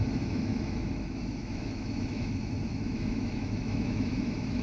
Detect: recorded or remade remade